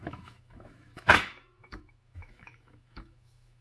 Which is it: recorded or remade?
remade